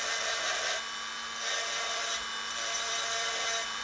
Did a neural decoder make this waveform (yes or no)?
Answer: no